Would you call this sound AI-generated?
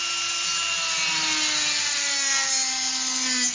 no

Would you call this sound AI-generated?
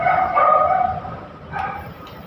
yes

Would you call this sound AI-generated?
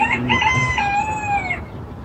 yes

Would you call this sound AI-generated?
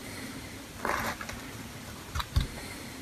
no